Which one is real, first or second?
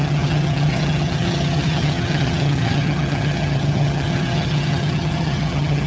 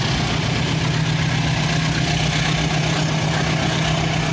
second